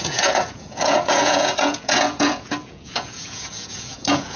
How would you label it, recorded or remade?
remade